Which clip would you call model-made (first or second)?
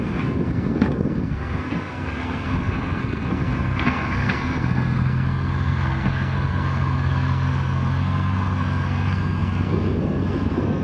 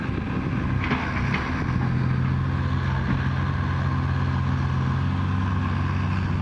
first